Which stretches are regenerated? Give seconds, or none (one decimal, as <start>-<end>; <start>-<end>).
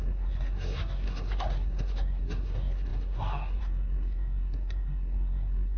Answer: 0.0-5.8